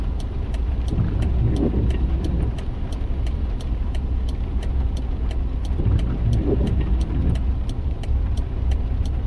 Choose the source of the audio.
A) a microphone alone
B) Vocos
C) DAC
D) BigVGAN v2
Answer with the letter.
D